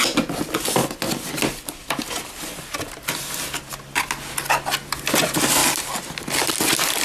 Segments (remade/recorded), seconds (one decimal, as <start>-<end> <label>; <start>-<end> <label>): 0.0-7.0 recorded